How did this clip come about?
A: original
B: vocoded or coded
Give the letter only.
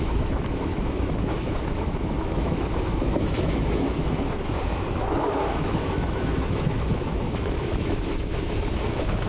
B